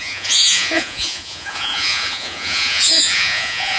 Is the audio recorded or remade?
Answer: remade